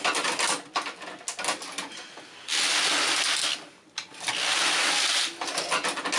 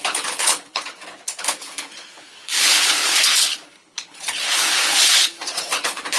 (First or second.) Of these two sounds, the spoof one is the second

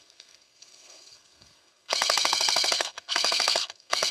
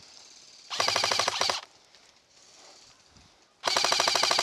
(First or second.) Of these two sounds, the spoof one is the first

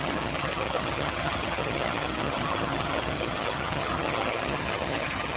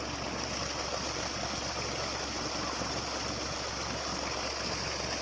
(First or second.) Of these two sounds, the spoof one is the first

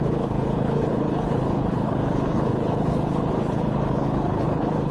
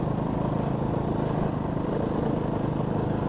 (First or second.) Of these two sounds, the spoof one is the first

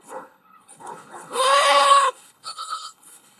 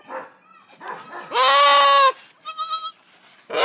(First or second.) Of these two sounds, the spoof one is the first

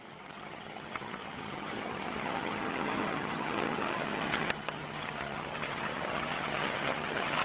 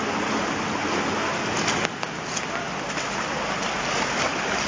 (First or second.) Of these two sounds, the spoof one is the first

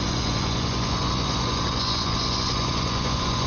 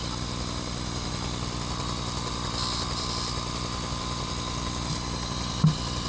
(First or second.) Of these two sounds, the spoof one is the first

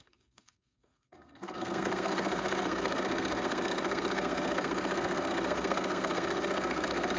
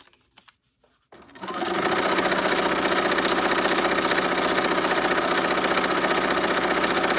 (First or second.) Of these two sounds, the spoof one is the first